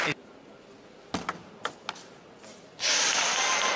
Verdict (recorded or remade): recorded